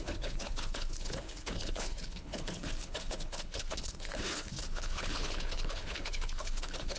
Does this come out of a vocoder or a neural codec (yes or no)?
yes